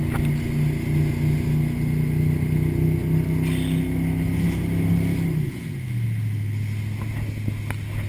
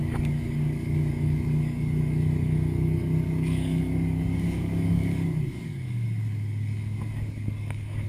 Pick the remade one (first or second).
second